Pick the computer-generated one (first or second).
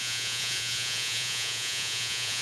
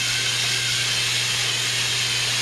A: first